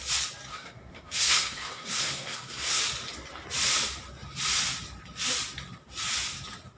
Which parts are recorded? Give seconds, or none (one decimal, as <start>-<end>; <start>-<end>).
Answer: 0.0-0.5; 2.8-6.8